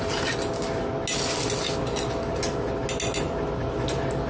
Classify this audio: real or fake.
real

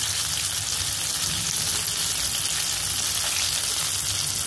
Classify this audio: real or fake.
real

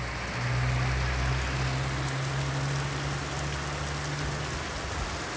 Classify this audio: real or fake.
real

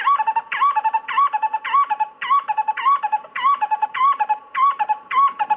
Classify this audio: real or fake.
real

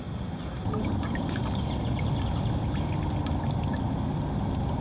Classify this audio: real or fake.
real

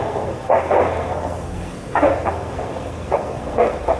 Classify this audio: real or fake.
fake